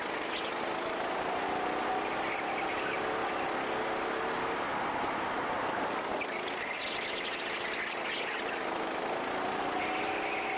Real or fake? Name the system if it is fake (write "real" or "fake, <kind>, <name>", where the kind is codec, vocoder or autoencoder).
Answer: real